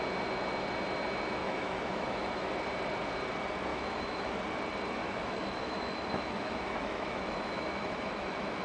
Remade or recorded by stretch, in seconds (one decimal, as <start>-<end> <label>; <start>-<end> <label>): 0.0-1.4 recorded; 1.4-2.5 remade; 2.5-3.7 recorded; 3.7-4.3 remade; 4.3-5.0 recorded; 5.0-8.6 remade